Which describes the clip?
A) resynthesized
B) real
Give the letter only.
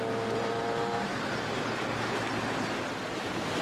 B